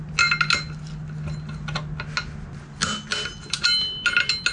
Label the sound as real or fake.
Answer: real